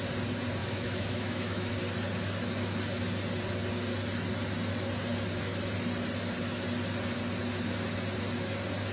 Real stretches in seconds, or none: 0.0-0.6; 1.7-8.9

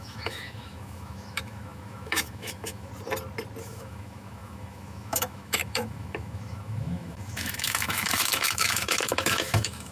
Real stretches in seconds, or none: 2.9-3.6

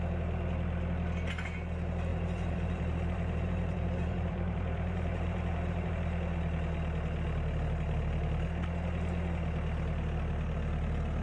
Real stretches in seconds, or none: 0.0-2.1; 5.9-11.2

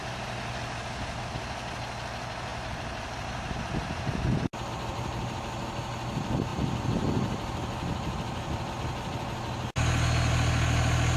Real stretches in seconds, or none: 0.0-2.5; 3.6-11.2